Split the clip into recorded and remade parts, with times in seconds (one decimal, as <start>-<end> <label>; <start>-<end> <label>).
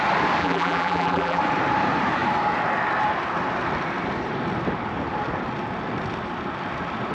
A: 0.0-0.4 recorded; 0.4-1.4 remade; 1.4-7.1 recorded